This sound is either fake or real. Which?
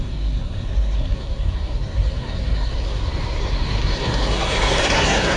fake